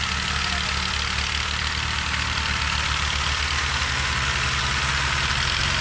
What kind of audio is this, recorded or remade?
recorded